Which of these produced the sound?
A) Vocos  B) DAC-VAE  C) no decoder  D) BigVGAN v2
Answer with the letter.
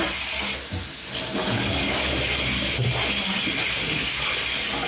C